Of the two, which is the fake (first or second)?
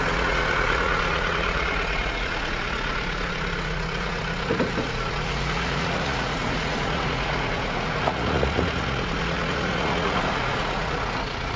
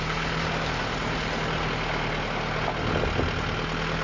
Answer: first